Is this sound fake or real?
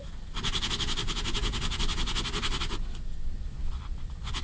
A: real